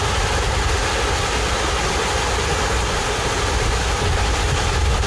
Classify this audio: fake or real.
real